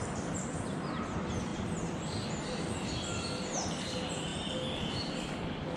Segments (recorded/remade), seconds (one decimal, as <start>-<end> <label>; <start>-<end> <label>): 0.0-5.8 recorded